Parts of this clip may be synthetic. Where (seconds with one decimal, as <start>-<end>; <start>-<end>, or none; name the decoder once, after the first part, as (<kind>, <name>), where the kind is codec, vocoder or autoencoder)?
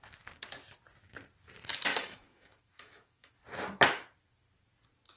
1.9-3.3 (autoencoder, DAC-VAE)